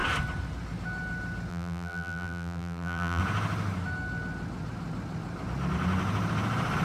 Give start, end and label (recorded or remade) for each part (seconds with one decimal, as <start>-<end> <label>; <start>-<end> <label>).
0.0-1.5 recorded; 1.5-3.2 remade; 3.2-6.8 recorded